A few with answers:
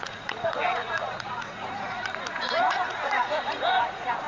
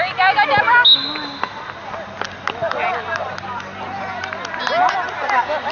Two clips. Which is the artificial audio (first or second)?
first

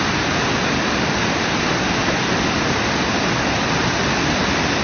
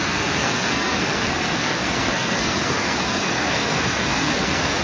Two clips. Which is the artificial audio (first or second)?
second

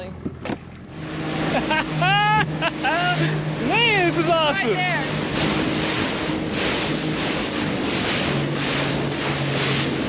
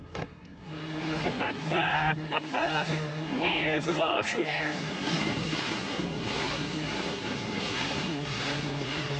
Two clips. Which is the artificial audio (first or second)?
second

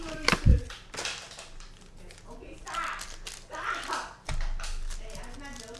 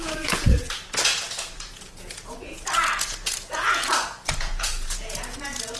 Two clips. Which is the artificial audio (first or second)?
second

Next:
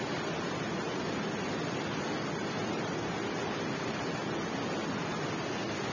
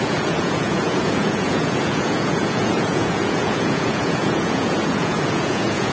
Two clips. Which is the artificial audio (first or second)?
second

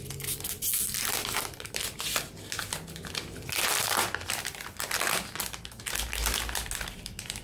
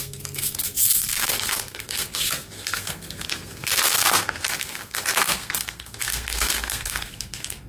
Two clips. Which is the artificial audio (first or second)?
second